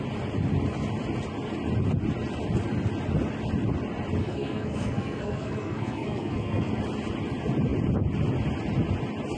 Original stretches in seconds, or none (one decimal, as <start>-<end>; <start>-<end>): 0.0-4.2; 6.7-9.4